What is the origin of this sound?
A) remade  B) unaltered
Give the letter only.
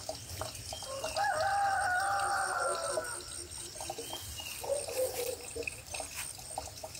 B